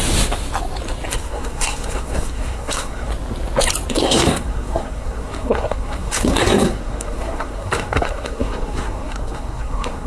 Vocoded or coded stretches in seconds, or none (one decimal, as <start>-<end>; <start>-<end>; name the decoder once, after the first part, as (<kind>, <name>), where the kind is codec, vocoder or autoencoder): 1.1-3.1 (codec, SNAC); 3.9-10.1